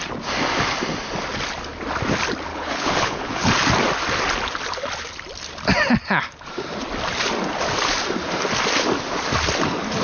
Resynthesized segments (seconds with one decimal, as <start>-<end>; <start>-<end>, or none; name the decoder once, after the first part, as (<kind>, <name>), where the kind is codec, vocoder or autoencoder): 2.5-3.5 (codec, HILCodec)